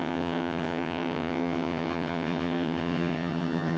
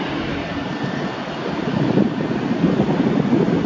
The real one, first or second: second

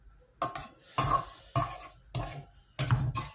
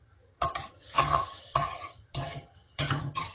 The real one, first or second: first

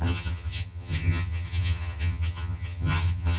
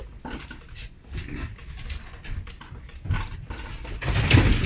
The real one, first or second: second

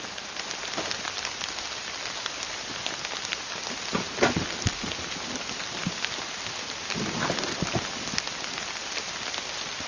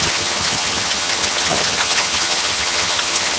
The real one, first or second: first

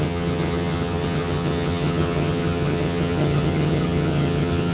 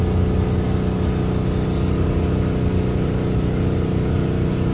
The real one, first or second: second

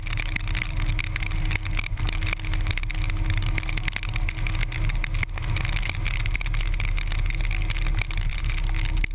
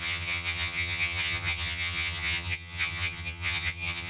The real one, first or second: first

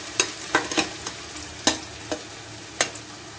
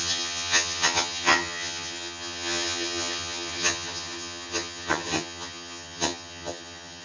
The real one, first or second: first